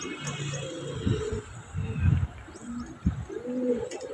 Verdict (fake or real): real